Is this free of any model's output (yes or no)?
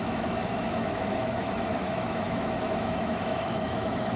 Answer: no